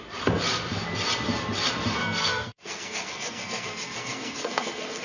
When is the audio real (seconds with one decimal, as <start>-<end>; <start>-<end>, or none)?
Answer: 0.0-2.0